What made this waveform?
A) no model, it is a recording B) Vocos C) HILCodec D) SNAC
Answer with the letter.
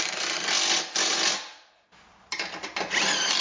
A